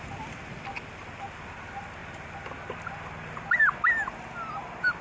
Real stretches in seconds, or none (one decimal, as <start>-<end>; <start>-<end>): 0.0-5.0